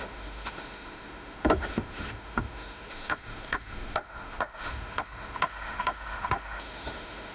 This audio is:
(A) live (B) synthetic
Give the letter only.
B